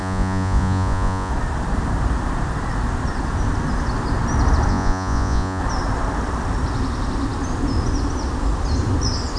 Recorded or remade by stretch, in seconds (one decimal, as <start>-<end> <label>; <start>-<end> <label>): 0.0-1.3 remade; 1.3-4.7 recorded; 4.7-5.6 remade; 5.6-9.4 recorded